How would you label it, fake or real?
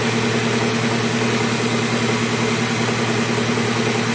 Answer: real